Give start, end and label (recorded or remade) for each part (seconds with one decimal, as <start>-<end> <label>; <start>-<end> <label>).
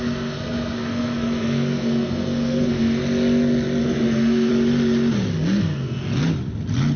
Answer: 0.0-3.0 remade; 3.0-3.8 recorded; 3.8-4.5 remade; 4.5-5.6 recorded; 5.6-6.0 remade; 6.0-7.0 recorded